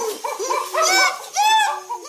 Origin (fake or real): real